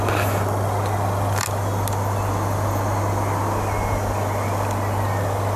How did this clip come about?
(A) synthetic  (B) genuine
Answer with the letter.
B